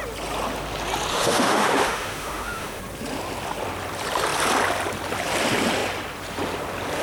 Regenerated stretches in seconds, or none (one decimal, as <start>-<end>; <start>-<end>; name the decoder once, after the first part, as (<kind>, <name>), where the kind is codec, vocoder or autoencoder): 1.1-2.8 (autoencoder, DAC-VAE)